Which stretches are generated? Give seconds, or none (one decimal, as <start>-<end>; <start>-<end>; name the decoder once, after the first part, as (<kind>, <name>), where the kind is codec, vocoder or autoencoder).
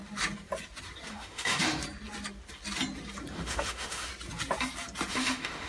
1.1-1.8 (autoencoder, DAC-VAE); 3.3-4.1; 5.1-5.7